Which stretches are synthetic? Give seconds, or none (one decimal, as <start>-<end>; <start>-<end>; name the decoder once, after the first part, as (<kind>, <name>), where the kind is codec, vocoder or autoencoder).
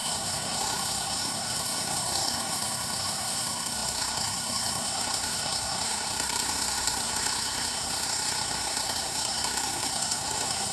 0.0-10.7 (codec, SNAC)